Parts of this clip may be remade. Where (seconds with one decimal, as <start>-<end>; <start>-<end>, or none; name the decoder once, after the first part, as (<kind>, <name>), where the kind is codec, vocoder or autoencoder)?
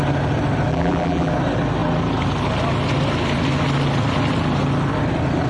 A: 0.7-1.3 (vocoder, BigVGAN v2)